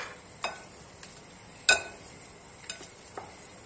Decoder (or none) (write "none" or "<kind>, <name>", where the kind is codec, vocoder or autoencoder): none